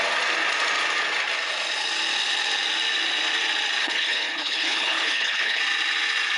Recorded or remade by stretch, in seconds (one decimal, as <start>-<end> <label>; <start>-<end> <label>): 0.0-3.8 recorded; 3.8-5.6 remade; 5.6-6.4 recorded